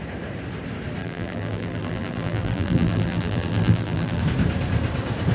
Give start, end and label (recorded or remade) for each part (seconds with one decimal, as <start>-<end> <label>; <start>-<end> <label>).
0.0-1.0 recorded; 1.0-4.2 remade; 4.2-5.3 recorded